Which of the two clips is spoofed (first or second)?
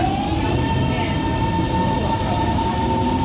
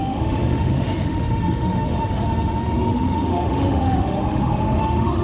second